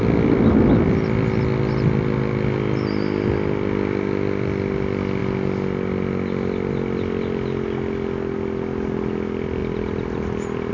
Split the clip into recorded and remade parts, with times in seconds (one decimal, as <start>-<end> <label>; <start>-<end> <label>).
0.0-10.7 recorded